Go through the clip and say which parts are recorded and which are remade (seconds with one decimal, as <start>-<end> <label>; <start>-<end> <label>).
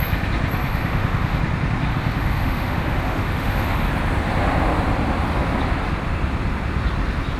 0.0-0.7 recorded; 0.7-1.4 remade; 1.4-1.9 recorded; 1.9-3.9 remade; 3.9-7.4 recorded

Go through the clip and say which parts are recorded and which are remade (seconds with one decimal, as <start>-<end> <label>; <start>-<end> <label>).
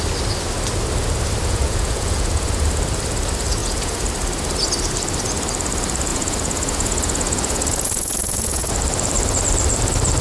0.0-1.4 recorded; 1.4-2.6 remade; 2.6-3.6 recorded; 3.6-4.1 remade; 4.1-6.1 recorded; 6.1-8.7 remade; 8.7-10.2 recorded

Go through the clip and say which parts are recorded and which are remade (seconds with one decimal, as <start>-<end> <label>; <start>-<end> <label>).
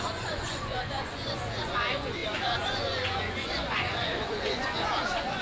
0.0-5.4 remade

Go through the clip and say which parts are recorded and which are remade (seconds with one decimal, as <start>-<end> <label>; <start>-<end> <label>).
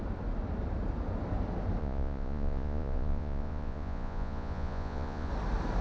0.0-1.8 recorded; 1.8-5.3 remade; 5.3-5.8 recorded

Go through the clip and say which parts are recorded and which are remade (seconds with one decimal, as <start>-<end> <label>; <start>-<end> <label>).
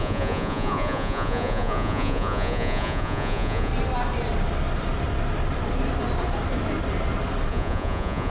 0.0-3.7 remade; 3.7-7.5 recorded; 7.5-8.3 remade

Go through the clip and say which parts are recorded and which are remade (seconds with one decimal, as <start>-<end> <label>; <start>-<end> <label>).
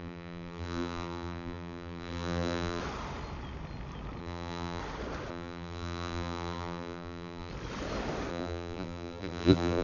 0.0-2.8 remade; 2.8-4.2 recorded; 4.2-4.8 remade; 4.8-5.3 recorded; 5.3-7.5 remade; 7.5-8.3 recorded; 8.3-9.8 remade